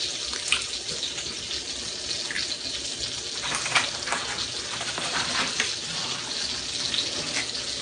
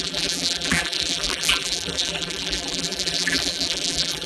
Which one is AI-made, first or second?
second